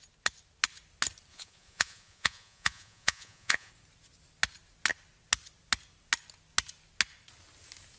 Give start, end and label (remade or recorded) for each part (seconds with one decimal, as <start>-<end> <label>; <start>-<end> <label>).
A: 0.0-1.3 recorded; 1.3-3.7 remade; 3.7-8.0 recorded